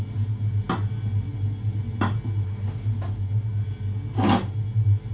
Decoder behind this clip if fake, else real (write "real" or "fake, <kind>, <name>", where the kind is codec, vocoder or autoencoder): real